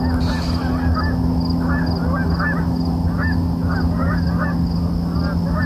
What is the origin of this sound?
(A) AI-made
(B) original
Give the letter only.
B